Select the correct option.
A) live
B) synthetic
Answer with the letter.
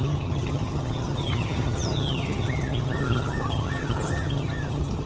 B